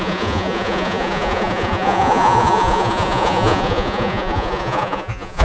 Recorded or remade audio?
remade